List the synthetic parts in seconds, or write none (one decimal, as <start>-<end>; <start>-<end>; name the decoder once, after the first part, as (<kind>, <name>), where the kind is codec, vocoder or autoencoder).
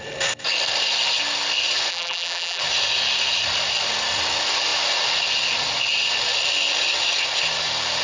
1.9-2.6 (vocoder, BigVGAN v2)